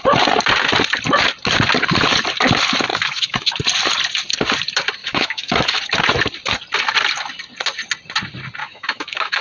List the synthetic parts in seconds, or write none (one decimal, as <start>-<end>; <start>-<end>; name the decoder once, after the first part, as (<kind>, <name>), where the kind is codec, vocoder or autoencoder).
2.9-3.6 (autoencoder, DAC-VAE); 5.0-5.8; 8.6-9.4